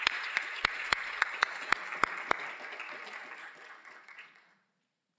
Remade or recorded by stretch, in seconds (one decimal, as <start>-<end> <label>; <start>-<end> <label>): 0.0-1.7 remade; 1.7-4.0 recorded; 4.0-5.2 remade